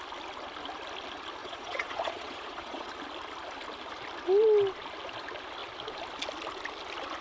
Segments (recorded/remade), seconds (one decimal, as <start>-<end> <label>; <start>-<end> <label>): 0.0-1.4 recorded; 1.4-2.9 remade; 2.9-7.2 recorded

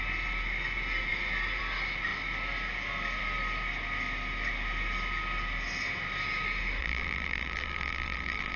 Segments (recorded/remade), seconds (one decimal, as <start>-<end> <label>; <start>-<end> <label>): 0.0-6.8 recorded; 6.8-8.6 remade